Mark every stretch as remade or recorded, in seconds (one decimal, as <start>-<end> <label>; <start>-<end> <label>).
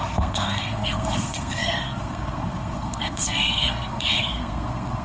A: 0.0-5.0 remade